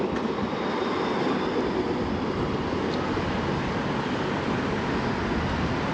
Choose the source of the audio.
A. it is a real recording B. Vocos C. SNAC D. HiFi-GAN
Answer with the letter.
A